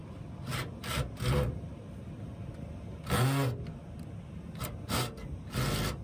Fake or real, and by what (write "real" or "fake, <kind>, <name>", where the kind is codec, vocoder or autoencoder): real